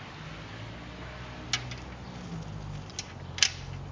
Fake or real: real